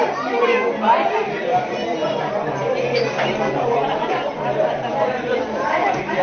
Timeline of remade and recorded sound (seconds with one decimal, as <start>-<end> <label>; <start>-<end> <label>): 0.0-0.5 remade; 0.5-4.1 recorded; 4.1-6.2 remade